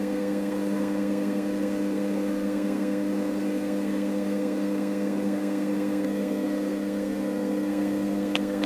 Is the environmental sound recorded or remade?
remade